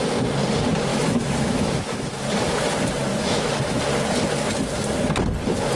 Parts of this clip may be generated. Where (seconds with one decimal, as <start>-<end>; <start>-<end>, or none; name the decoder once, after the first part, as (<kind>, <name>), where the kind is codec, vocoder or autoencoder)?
0.9-2.1 (autoencoder, DAC-VAE); 3.1-3.8